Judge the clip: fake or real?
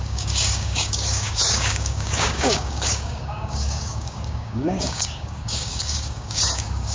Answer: fake